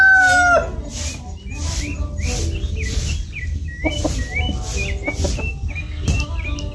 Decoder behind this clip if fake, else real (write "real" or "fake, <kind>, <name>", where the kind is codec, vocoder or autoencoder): real